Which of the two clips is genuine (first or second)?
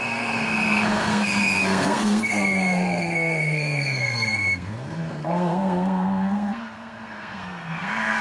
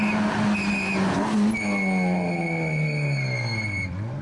second